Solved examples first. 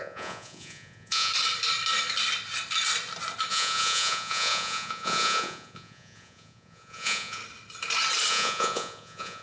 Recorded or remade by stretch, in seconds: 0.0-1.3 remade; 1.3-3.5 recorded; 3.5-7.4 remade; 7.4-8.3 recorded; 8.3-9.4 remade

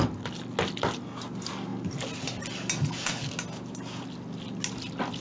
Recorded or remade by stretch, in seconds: 0.0-5.2 recorded